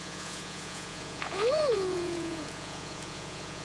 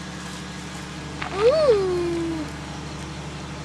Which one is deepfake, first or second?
first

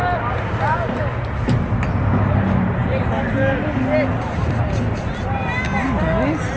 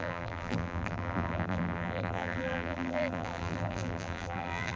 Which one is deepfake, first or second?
second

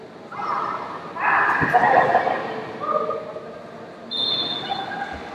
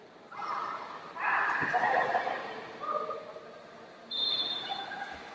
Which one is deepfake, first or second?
second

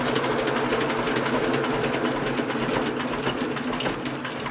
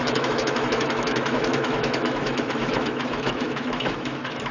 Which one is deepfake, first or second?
second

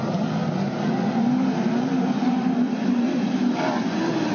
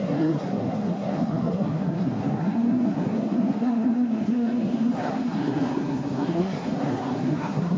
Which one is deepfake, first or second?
second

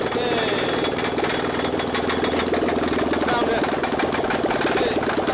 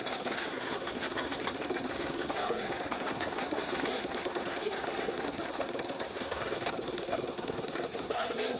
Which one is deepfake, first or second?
second